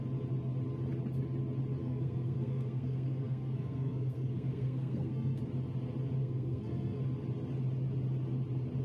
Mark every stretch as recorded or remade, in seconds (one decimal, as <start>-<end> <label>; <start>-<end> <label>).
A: 0.0-1.8 recorded; 1.8-5.4 remade; 5.4-6.2 recorded; 6.2-7.0 remade; 7.0-8.8 recorded